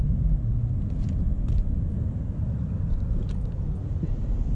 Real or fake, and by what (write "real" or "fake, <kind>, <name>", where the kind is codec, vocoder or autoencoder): real